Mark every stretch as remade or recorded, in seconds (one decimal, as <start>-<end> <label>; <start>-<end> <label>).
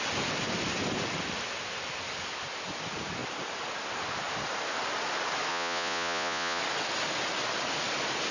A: 0.0-5.5 recorded; 5.5-6.6 remade; 6.6-8.3 recorded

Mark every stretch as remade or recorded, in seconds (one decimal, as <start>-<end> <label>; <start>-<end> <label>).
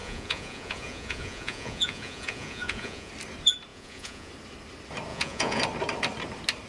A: 0.0-3.1 remade; 3.1-3.7 recorded; 3.7-4.3 remade; 4.3-5.1 recorded; 5.1-5.6 remade; 5.6-6.7 recorded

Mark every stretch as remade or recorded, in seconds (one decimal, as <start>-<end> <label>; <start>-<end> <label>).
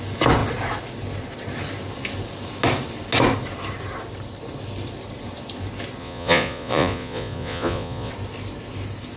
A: 0.0-6.0 recorded; 6.0-8.1 remade; 8.1-9.2 recorded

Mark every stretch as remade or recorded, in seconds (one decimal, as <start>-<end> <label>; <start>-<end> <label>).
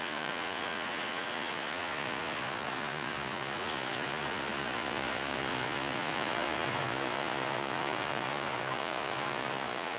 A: 0.0-10.0 remade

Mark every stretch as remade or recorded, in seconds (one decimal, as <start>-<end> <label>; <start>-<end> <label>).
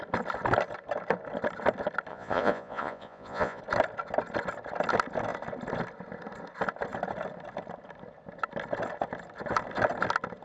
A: 0.0-2.1 recorded; 2.1-3.6 remade; 3.6-10.4 recorded